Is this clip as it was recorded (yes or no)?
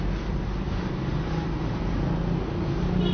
yes